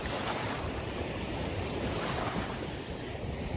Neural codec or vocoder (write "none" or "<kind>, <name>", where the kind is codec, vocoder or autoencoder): vocoder, BigVGAN v2